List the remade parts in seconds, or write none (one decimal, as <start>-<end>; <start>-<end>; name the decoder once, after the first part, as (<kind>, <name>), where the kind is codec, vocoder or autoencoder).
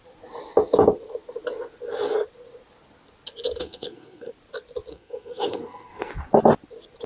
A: 3.6-4.3 (codec, SNAC); 4.9-6.1